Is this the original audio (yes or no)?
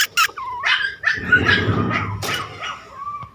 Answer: yes